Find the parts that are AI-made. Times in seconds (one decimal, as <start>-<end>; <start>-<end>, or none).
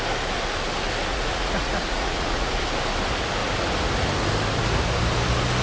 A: 1.1-2.6